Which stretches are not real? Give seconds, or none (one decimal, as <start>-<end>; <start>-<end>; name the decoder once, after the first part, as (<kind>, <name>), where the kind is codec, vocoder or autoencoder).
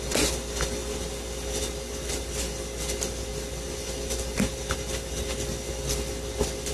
none